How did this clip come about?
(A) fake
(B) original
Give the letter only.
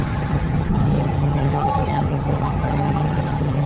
A